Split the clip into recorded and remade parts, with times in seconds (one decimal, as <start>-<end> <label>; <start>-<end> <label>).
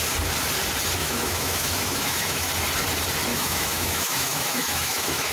0.0-1.0 recorded; 1.0-2.5 remade; 2.5-3.3 recorded; 3.3-5.3 remade